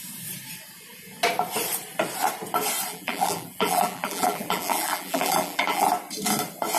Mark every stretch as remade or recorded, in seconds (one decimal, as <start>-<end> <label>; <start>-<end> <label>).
0.0-2.9 recorded; 2.9-5.9 remade; 5.9-6.8 recorded